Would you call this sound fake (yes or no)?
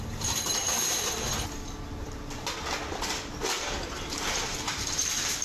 yes